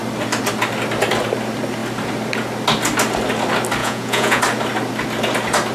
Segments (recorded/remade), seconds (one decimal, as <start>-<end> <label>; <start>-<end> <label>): 0.0-3.8 recorded; 3.8-4.4 remade; 4.4-5.7 recorded